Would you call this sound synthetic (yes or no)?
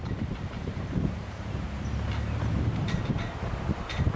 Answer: yes